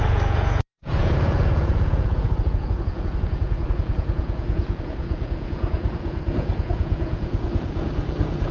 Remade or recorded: remade